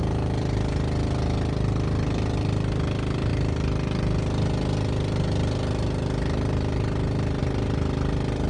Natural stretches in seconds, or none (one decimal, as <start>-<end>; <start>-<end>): 0.0-8.5